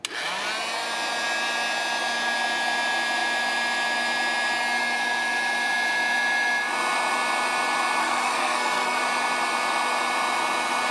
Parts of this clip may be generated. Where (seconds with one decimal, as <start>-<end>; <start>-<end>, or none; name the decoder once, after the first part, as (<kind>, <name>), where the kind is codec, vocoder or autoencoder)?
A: 8.0-9.0 (codec, SNAC)